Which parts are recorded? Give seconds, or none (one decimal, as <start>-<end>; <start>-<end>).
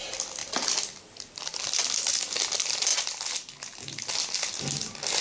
0.0-5.2